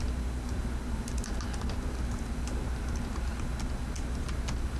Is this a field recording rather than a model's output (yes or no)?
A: yes